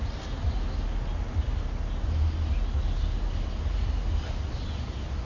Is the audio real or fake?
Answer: real